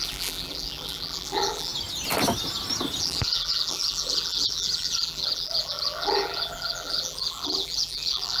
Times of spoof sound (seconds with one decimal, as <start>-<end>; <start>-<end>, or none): 0.0-1.7; 3.0-8.4